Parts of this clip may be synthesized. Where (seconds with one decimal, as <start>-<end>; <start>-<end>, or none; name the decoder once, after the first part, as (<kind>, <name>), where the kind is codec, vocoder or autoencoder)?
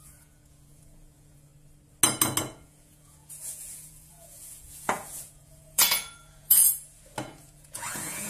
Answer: 0.0-1.5 (vocoder, Vocos); 2.4-6.6; 7.2-8.3